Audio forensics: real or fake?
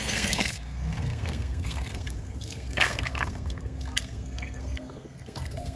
fake